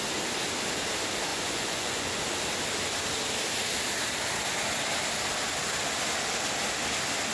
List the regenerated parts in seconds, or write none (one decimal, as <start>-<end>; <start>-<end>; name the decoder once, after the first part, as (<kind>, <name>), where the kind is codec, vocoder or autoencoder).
1.3-2.2 (vocoder, Vocos)